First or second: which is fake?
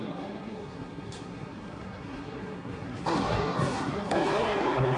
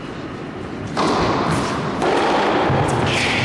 first